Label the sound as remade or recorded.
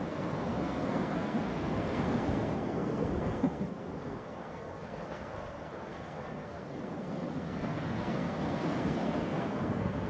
remade